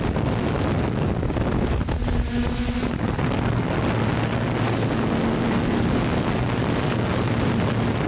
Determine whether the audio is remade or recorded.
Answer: recorded